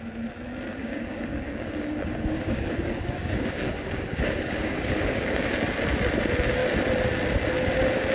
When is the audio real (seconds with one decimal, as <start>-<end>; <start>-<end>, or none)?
0.0-0.8; 5.4-8.1